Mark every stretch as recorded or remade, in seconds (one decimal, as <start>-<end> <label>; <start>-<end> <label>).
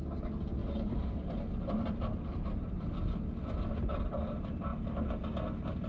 0.0-0.6 recorded; 0.6-4.1 remade; 4.1-5.9 recorded